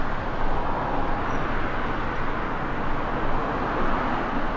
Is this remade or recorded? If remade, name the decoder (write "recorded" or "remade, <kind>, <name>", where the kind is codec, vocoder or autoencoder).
recorded